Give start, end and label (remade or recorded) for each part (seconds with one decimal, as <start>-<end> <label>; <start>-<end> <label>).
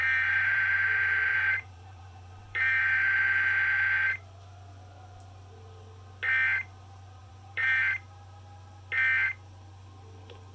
0.0-2.8 remade; 2.8-7.2 recorded; 7.2-7.8 remade; 7.8-10.5 recorded